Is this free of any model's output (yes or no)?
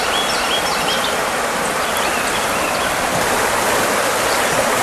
yes